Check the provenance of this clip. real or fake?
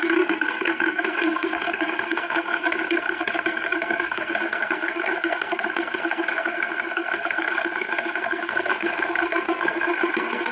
fake